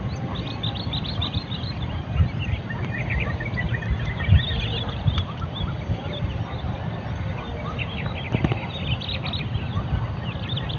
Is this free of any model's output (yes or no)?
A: yes